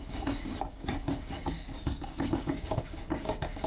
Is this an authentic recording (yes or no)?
no